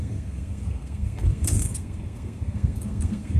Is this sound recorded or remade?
remade